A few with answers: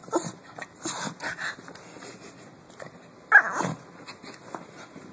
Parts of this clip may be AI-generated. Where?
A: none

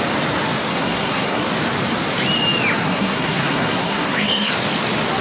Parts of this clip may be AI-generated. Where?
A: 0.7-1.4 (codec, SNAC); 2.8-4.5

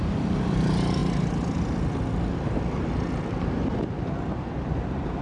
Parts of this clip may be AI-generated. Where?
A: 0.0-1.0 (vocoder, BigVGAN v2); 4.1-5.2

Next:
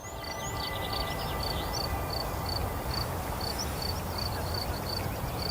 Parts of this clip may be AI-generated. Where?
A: none

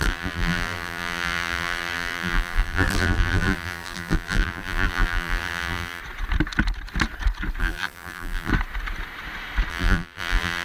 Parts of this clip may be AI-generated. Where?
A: 0.0-6.0 (vocoder, BigVGAN v2); 7.6-8.5; 9.7-10.6

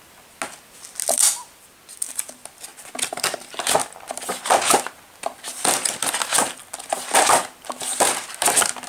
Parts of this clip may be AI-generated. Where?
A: none